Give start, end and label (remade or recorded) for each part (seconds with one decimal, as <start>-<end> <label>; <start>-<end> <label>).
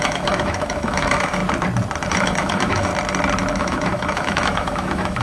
0.0-1.4 remade; 1.4-2.1 recorded; 2.1-2.9 remade; 2.9-3.5 recorded; 3.5-5.2 remade